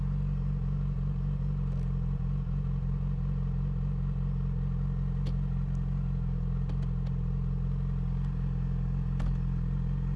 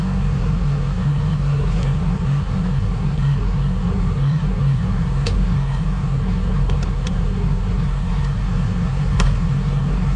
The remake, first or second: second